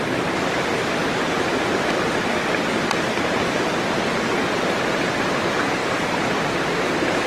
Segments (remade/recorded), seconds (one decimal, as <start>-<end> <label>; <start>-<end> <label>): 0.0-7.3 recorded